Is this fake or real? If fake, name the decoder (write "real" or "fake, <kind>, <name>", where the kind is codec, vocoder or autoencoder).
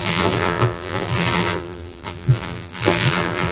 fake, vocoder, BigVGAN v2